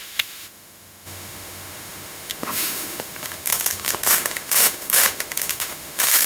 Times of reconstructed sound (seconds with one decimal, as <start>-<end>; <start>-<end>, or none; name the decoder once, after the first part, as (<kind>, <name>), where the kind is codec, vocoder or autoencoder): 0.0-6.3 (autoencoder, DAC-VAE)